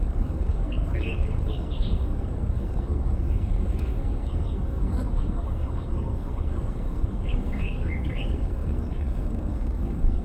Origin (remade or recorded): remade